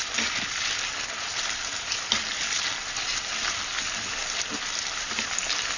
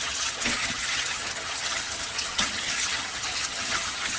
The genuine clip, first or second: first